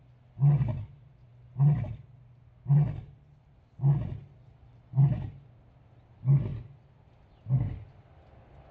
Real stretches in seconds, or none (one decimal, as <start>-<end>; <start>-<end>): 0.0-8.7